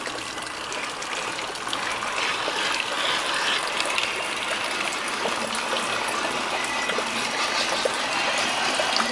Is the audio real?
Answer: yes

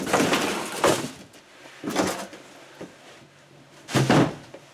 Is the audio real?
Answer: yes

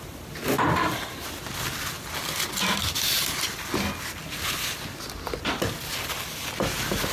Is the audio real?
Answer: yes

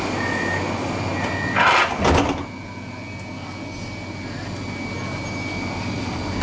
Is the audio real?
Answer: yes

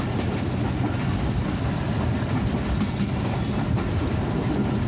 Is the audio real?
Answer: yes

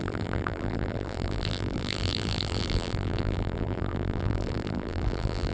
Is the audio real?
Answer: no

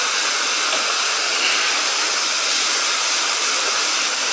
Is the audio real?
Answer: yes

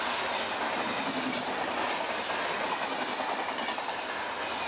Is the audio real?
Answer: yes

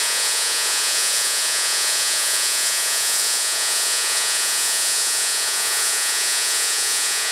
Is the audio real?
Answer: no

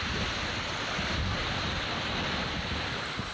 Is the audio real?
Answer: yes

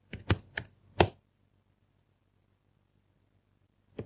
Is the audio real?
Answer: yes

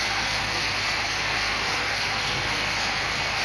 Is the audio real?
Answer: no